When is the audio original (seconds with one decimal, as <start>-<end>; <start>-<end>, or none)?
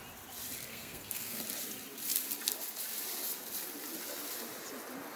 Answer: 0.0-0.7; 1.4-5.2